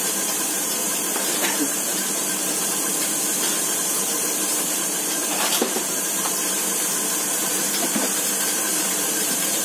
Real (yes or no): no